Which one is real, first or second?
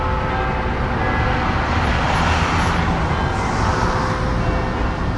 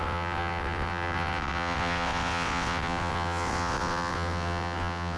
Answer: first